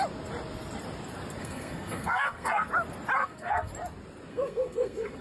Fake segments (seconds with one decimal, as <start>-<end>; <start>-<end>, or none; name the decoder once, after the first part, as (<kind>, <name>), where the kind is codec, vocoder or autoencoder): 1.4-2.7 (codec, SNAC); 3.2-3.7; 4.3-5.2